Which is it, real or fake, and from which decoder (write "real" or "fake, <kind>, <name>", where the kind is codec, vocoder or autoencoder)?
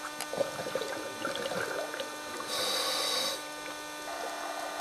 real